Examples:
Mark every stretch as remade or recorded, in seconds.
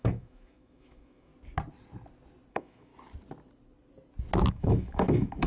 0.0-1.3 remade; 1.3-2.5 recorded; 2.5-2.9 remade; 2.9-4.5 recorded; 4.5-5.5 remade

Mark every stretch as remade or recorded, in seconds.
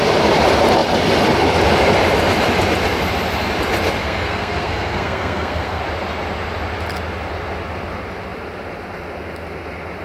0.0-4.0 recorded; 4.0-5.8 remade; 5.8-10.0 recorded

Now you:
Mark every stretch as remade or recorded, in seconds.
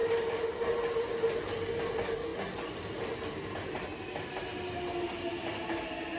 0.0-6.2 recorded